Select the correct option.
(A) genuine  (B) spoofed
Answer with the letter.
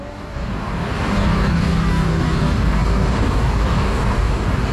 B